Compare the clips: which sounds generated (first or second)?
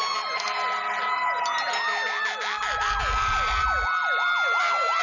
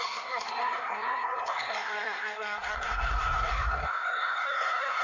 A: second